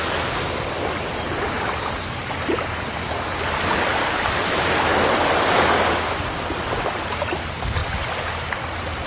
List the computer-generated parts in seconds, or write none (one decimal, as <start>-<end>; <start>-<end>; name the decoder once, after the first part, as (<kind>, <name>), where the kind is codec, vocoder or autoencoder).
none